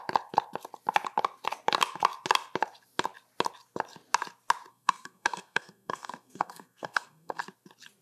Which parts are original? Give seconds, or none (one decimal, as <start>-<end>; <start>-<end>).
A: 0.0-4.7; 7.4-8.0

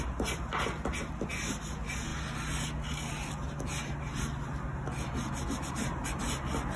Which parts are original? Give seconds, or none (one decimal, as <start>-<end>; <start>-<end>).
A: 0.0-6.8

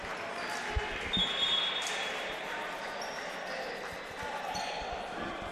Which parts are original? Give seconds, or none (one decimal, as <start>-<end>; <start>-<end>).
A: 0.0-5.5

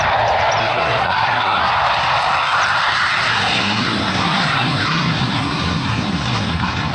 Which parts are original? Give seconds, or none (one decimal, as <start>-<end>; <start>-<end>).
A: 0.0-0.6; 1.7-3.3

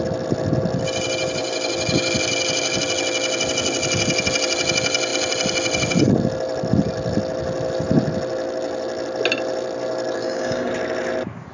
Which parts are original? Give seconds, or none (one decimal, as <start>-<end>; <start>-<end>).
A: 0.0-10.2; 10.7-11.5